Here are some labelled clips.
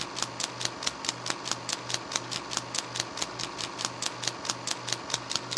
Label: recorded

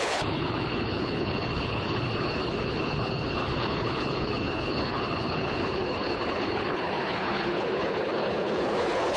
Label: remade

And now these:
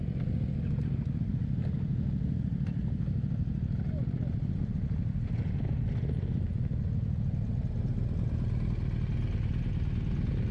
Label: recorded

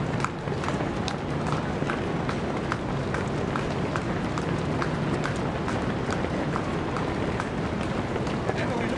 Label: recorded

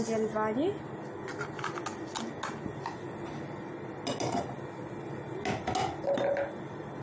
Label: recorded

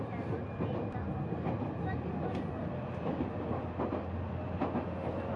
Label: recorded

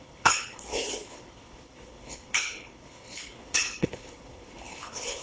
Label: remade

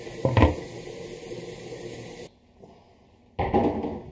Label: recorded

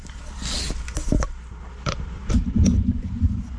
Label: recorded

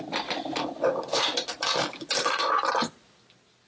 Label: recorded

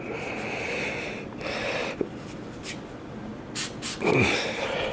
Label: recorded